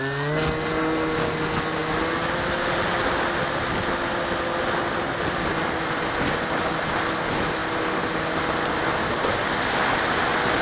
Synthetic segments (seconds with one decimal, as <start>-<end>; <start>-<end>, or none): none

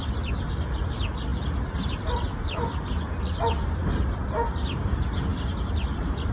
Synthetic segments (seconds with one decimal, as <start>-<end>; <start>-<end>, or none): none